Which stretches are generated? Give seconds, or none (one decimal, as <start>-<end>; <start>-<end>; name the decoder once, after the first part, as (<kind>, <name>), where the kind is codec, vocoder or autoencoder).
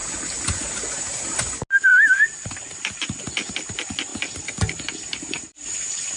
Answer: none